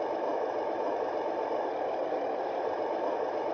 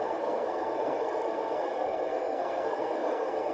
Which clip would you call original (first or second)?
first